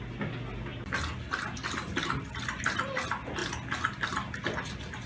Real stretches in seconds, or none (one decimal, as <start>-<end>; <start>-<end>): 0.0-5.1